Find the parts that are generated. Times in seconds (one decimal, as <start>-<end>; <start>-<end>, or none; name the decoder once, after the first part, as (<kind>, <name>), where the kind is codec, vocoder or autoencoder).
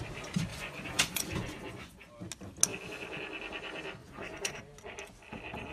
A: 0.5-2.1 (vocoder, Vocos); 4.0-4.6